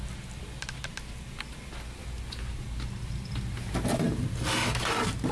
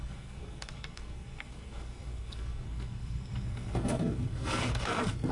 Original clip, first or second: first